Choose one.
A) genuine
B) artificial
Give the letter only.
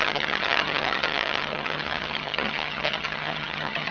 B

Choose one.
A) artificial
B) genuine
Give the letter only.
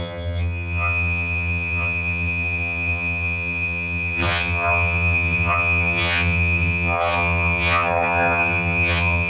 A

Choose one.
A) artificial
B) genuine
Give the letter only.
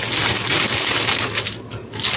B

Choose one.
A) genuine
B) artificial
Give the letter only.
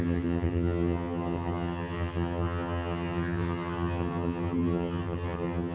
B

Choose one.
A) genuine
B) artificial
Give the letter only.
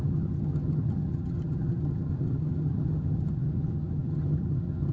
B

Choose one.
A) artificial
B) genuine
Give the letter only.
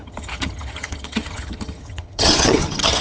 A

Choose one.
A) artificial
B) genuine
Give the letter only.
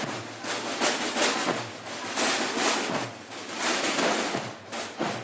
B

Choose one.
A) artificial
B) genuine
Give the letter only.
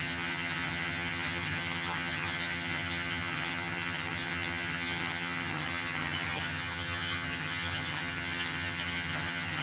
A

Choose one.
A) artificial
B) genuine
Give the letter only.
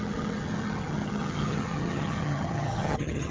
A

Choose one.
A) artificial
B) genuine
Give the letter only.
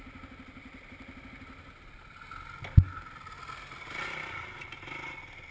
B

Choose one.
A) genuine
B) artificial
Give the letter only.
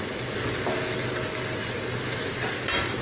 A